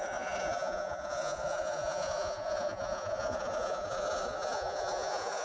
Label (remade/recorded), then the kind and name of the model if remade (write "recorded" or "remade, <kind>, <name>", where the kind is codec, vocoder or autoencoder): remade, vocoder, Vocos